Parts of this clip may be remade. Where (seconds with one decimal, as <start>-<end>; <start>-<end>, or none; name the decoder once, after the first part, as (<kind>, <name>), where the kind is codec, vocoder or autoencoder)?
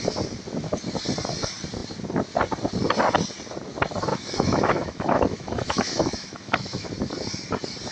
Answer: 4.1-6.9 (autoencoder, DAC-VAE)